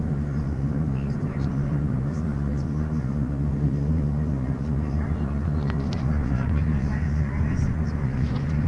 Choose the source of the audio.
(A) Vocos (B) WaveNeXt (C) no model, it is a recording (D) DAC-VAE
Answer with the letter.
A